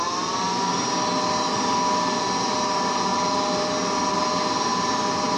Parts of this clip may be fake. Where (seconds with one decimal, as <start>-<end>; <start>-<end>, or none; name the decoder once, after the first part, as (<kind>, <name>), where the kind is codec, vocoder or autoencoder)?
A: none